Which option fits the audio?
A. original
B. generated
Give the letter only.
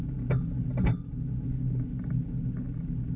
A